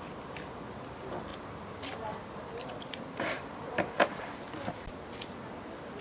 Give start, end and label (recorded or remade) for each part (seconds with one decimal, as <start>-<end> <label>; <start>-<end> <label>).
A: 0.0-1.3 recorded; 1.3-4.9 remade; 4.9-6.0 recorded